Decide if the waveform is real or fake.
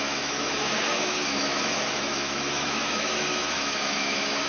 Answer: fake